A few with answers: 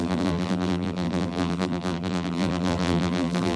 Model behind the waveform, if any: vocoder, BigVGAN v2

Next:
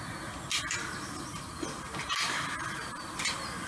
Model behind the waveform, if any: none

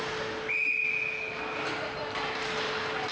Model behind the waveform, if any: none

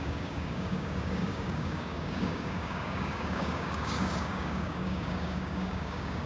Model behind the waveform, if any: codec, DAC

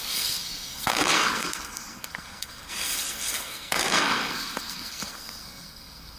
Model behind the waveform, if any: codec, SNAC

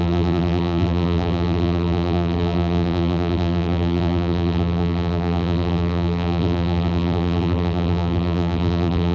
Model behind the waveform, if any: vocoder, BigVGAN v2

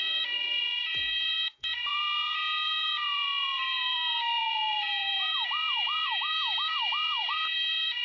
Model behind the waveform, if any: vocoder, Vocos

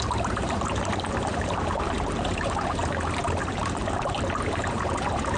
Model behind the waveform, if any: vocoder, BigVGAN v2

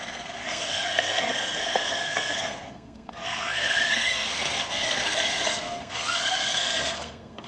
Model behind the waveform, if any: codec, SNAC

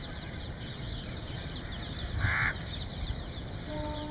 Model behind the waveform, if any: vocoder, BigVGAN v2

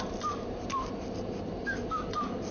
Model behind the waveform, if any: vocoder, BigVGAN v2